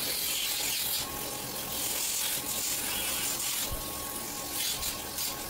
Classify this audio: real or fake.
real